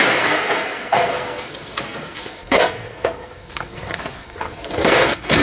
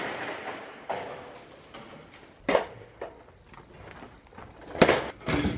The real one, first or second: second